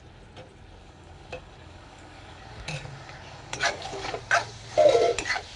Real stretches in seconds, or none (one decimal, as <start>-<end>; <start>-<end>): 0.0-0.8; 4.2-5.6

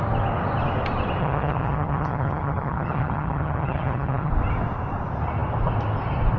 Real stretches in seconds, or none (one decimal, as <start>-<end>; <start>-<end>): 0.0-1.2; 4.3-6.4